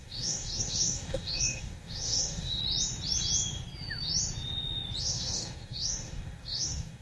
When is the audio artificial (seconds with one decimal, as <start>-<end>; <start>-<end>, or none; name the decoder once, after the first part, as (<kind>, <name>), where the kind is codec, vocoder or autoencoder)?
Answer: 0.0-2.6 (codec, DAC); 5.0-7.0

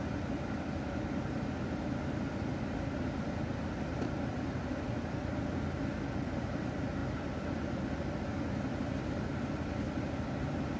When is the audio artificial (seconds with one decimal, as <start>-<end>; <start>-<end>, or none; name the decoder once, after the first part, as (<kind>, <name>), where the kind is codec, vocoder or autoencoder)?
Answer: none

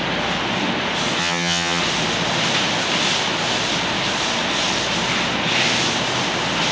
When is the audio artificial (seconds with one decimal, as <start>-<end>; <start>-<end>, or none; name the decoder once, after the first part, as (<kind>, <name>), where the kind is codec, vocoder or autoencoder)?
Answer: 1.2-1.8 (vocoder, HiFi-GAN)

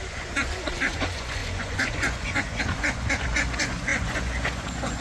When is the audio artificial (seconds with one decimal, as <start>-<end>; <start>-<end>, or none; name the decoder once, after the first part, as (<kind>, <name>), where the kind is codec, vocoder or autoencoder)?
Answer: 0.0-5.0 (vocoder, Vocos)